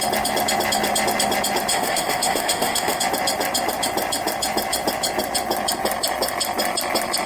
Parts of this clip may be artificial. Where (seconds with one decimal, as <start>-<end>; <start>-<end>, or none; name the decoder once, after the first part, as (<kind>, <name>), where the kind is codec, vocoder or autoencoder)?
1.7-3.0 (autoencoder, DAC-VAE)